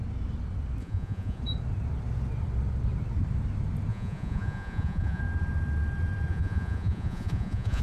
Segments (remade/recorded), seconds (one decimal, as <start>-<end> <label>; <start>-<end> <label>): 0.0-0.8 recorded; 0.8-1.4 remade; 1.4-3.9 recorded; 3.9-5.2 remade; 5.2-6.3 recorded; 6.3-7.8 remade